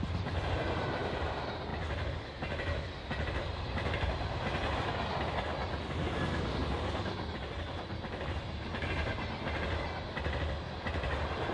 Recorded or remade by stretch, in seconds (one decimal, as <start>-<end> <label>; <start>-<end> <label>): 0.0-11.5 recorded